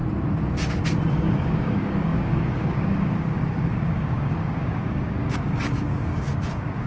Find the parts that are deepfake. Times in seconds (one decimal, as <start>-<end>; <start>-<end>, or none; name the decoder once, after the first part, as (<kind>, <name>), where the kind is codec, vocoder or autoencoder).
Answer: 1.1-6.9 (codec, DAC)